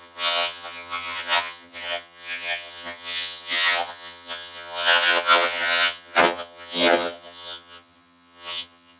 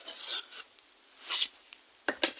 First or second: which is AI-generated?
first